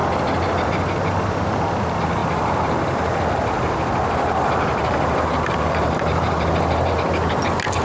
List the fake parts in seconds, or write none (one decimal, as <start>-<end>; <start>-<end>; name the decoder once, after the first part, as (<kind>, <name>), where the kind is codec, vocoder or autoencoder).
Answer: 2.2-6.9 (vocoder, BigVGAN v2)